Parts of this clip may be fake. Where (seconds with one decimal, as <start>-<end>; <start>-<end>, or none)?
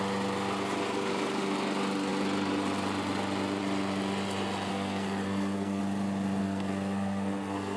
4.7-5.8; 6.4-7.8